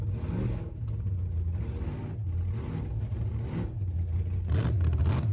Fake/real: real